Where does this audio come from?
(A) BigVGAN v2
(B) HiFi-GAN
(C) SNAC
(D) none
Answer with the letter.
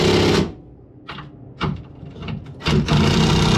D